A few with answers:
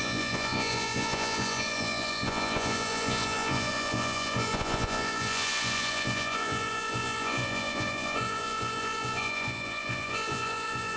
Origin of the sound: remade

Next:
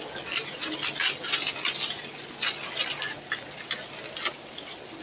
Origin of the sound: recorded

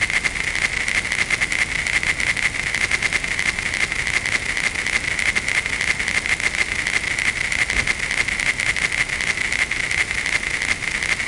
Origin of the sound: recorded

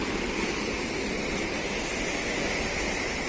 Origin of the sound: recorded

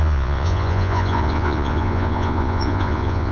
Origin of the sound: remade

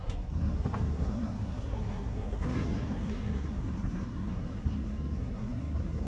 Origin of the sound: remade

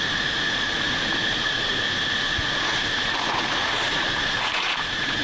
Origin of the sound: remade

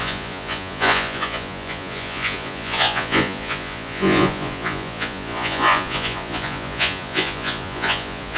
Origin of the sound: remade